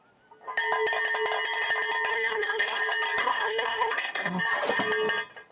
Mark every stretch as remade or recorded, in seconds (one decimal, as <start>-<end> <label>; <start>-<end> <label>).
0.0-2.1 recorded; 2.1-2.8 remade; 2.8-3.2 recorded; 3.2-4.4 remade; 4.4-5.5 recorded

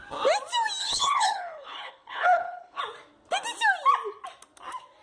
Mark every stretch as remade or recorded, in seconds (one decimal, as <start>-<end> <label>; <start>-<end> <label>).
0.0-0.8 recorded; 0.8-2.8 remade; 2.8-5.0 recorded